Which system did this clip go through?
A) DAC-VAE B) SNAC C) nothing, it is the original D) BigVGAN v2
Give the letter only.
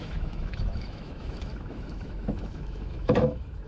A